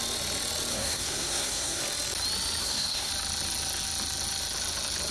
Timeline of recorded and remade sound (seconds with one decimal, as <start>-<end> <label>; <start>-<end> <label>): 0.0-0.7 recorded; 0.7-1.8 remade; 1.8-2.6 recorded; 2.6-3.1 remade; 3.1-5.1 recorded